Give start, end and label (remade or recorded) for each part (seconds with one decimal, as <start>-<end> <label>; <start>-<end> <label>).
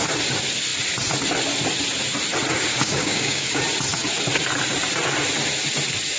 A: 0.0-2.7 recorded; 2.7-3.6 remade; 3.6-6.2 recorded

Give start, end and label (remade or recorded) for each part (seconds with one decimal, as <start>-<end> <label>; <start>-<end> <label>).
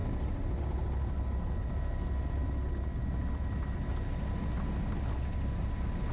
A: 0.0-6.1 recorded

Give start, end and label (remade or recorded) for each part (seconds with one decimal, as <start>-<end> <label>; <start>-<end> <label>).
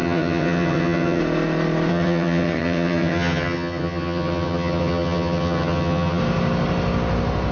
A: 0.0-1.2 remade; 1.2-1.9 recorded; 1.9-6.2 remade; 6.2-7.5 recorded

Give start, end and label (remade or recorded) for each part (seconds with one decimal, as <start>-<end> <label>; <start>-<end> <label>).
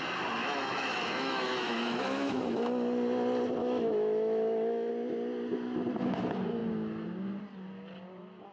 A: 0.0-0.4 recorded; 0.4-2.7 remade; 2.7-3.6 recorded; 3.6-4.9 remade; 4.9-8.5 recorded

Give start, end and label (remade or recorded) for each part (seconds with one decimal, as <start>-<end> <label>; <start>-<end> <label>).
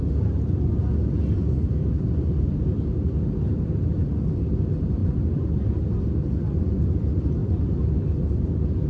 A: 0.0-1.4 recorded; 1.4-3.4 remade; 3.4-8.9 recorded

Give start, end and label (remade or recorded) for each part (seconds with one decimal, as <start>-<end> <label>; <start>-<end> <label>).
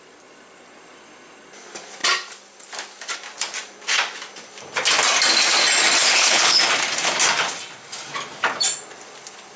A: 0.0-6.0 recorded; 6.0-6.6 remade; 6.6-9.6 recorded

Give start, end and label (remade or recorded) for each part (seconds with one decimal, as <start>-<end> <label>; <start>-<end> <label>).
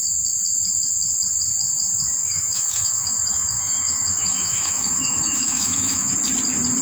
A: 0.0-2.2 recorded; 2.2-6.1 remade; 6.1-6.8 recorded